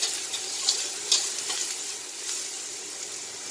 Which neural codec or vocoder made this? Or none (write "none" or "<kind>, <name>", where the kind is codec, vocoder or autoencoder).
none